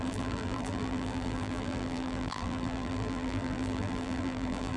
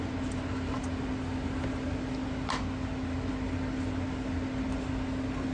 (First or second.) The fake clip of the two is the first